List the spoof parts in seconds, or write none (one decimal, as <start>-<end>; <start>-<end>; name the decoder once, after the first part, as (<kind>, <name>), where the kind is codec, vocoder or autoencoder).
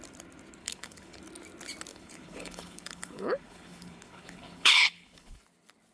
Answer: 0.6-1.2 (codec, HILCodec); 1.9-5.4